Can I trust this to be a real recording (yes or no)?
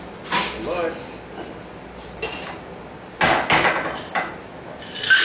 yes